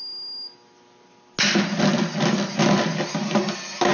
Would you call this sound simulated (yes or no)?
no